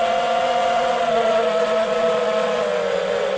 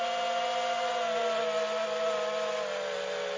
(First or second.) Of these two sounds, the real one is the second